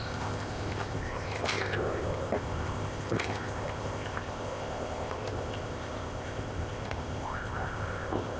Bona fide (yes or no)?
no